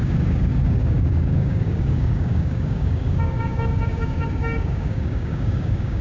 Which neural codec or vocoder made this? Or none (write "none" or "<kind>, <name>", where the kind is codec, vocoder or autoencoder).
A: codec, DAC